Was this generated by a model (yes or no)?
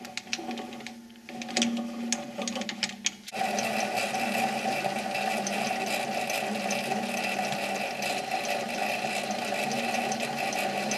no